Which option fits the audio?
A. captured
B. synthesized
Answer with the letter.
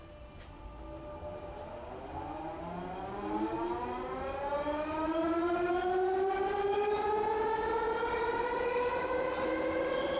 A